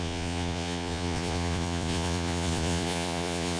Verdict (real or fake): fake